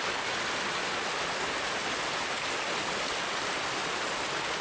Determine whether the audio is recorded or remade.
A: recorded